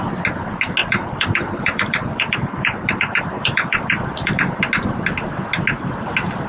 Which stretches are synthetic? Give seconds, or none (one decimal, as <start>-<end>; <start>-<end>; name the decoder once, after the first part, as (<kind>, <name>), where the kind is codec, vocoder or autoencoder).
0.8-4.7 (vocoder, BigVGAN v2)